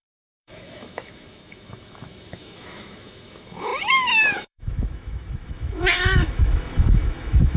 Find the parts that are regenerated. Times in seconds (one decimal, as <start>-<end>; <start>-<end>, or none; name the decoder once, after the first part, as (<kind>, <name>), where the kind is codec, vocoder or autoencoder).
0.0-7.6 (autoencoder, DAC-VAE)